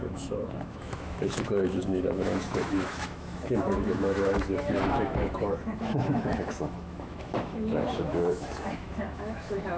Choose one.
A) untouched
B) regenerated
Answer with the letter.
B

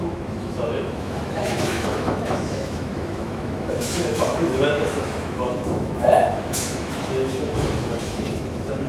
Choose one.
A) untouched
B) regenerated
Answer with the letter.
B